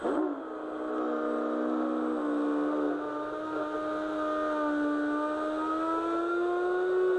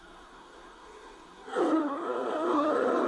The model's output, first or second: second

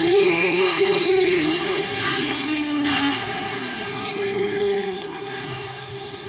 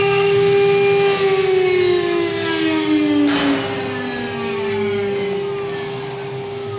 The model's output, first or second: first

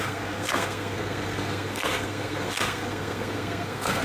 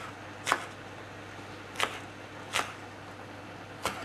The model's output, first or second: first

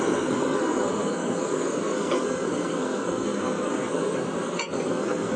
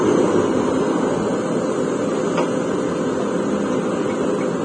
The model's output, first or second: first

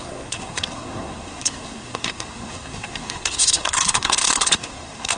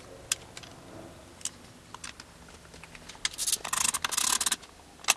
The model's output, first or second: first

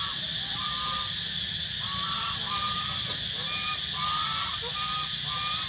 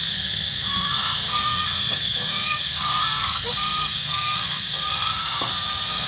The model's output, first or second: second